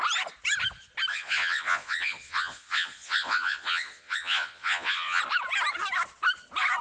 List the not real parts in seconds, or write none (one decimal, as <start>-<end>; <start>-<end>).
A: 1.1-5.2